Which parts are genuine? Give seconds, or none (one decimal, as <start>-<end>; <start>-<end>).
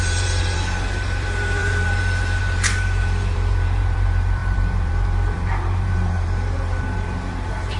none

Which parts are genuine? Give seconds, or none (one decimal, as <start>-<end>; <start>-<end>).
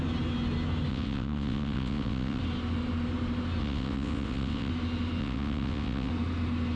0.0-0.9; 2.4-3.6; 4.7-5.2; 6.1-6.8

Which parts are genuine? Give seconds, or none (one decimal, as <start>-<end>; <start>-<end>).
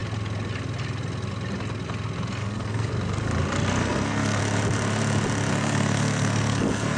0.0-2.4; 2.9-3.8; 4.4-5.5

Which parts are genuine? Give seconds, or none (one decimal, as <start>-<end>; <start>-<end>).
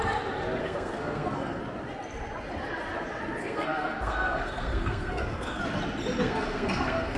0.0-0.6; 1.6-3.4; 5.6-6.2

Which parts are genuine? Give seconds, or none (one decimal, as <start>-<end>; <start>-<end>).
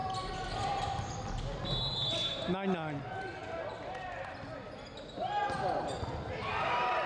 0.0-7.1